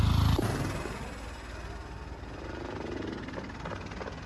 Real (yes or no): yes